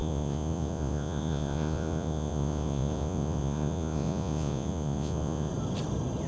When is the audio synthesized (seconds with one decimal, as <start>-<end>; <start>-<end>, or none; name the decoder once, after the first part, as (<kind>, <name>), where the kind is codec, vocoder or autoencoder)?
0.0-5.5 (vocoder, Vocos)